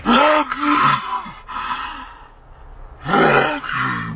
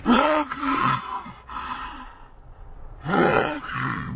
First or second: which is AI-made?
second